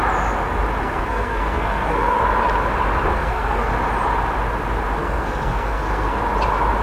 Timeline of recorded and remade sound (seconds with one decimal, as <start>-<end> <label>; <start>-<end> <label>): 0.0-0.8 recorded; 0.8-2.2 remade; 2.2-3.1 recorded; 3.1-3.7 remade; 3.7-5.0 recorded; 5.0-6.2 remade; 6.2-6.8 recorded

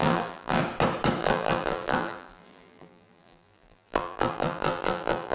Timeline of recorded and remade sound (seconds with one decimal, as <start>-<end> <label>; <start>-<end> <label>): 0.0-0.6 remade; 0.6-1.2 recorded; 1.2-5.3 remade